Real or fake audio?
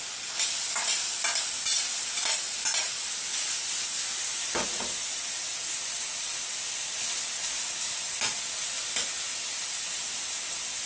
real